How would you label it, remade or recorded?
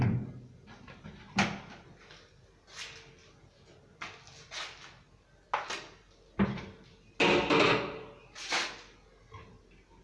recorded